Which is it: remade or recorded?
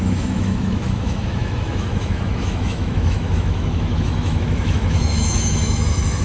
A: remade